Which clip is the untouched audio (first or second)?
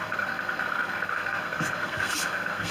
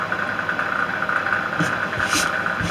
second